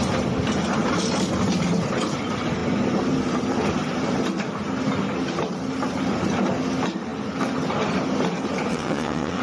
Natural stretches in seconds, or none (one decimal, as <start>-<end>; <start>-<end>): 0.0-8.7